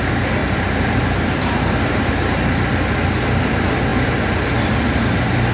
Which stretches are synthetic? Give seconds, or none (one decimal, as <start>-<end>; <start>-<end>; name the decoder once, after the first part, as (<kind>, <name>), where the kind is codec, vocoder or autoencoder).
0.4-1.9 (vocoder, BigVGAN v2)

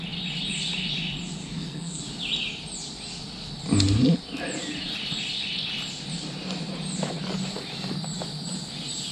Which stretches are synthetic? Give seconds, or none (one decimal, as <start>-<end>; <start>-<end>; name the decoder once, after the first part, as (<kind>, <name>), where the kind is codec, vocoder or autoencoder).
1.4-2.0 (codec, SNAC)

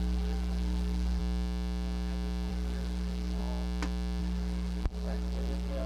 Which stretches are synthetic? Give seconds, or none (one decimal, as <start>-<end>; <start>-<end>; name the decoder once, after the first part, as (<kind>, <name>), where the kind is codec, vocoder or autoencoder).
0.0-1.2 (codec, SNAC); 2.5-3.4; 4.2-5.9

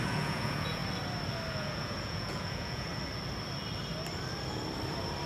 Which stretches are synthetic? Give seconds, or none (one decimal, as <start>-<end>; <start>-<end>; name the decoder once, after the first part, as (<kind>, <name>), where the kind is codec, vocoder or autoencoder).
0.0-0.8 (vocoder, Vocos); 1.5-2.9